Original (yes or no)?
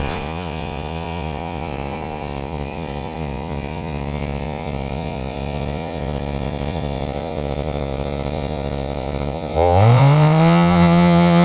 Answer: no